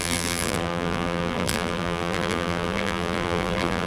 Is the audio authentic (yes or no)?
no